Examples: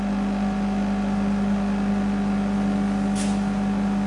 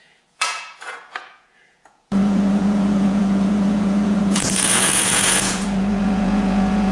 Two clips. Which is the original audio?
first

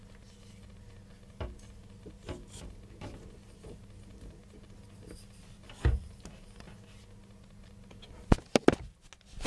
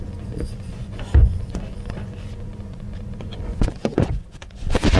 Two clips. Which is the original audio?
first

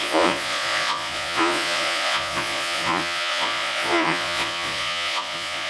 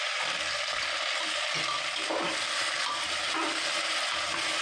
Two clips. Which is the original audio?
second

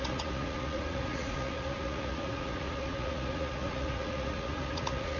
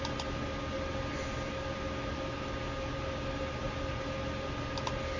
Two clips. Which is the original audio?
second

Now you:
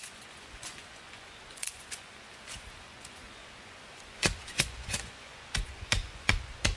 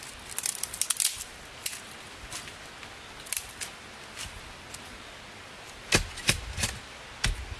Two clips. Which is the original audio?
second